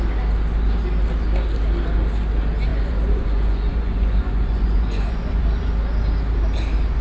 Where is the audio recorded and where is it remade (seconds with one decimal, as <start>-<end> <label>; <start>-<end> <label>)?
0.0-2.7 recorded; 2.7-5.4 remade; 5.4-7.0 recorded